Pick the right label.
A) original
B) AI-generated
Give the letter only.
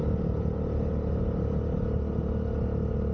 A